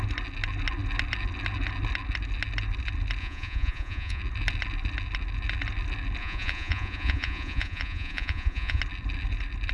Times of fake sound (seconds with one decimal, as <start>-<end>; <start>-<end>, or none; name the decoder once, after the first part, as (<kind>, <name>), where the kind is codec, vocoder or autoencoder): 3.2-4.2 (vocoder, Vocos); 6.2-8.8